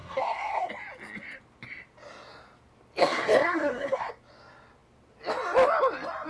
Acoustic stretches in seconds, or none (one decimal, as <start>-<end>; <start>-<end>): 0.7-3.0; 4.1-6.3